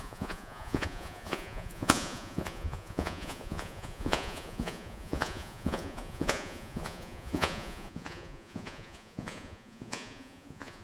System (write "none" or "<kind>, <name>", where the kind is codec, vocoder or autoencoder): vocoder, Vocos